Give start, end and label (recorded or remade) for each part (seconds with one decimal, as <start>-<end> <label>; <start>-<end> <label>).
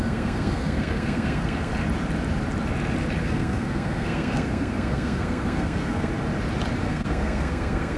0.0-1.7 remade; 1.7-3.2 recorded; 3.2-6.1 remade; 6.1-6.8 recorded; 6.8-8.0 remade